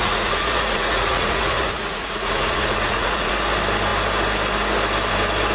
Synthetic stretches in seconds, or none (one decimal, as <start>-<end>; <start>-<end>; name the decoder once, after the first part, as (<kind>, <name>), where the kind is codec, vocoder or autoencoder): 0.0-3.3 (vocoder, Vocos)